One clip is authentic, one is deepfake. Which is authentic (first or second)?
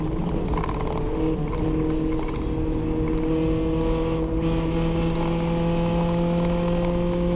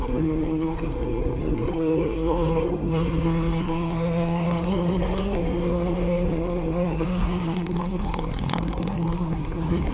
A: first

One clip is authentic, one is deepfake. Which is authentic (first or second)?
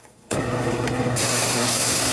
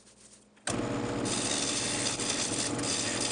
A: second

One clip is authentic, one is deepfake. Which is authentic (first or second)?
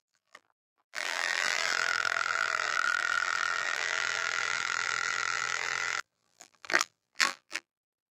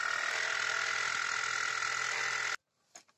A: second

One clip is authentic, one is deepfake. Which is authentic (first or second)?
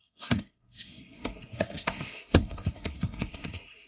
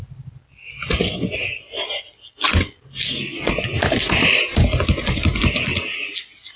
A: second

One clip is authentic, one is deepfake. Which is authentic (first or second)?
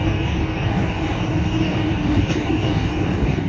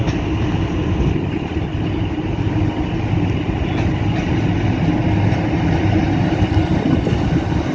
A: second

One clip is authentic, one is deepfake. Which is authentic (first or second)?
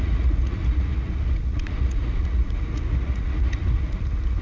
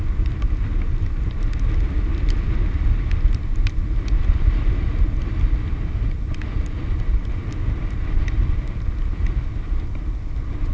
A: second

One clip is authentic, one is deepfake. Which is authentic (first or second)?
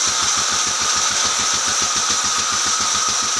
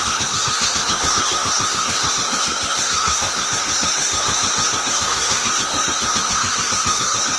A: first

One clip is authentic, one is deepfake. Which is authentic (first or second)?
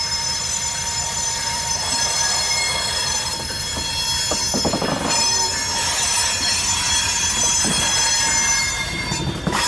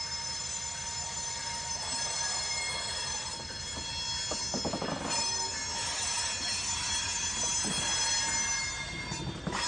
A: second